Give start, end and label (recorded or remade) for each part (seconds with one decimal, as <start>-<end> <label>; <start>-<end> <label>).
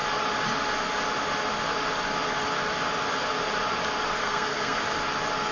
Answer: 0.0-4.2 recorded; 4.2-4.8 remade; 4.8-5.5 recorded